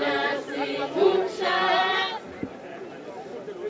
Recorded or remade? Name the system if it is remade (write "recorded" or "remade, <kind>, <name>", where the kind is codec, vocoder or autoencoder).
recorded